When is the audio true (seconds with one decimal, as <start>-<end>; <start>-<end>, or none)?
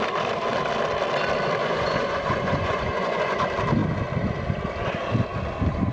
0.0-1.6; 3.4-5.9